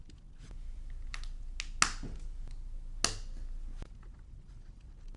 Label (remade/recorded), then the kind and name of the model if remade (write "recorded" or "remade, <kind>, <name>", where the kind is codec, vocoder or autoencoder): recorded